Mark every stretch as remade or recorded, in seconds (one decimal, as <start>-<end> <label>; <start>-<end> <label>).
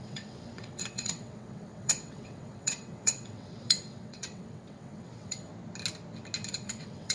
0.0-5.5 remade; 5.5-6.5 recorded; 6.5-7.1 remade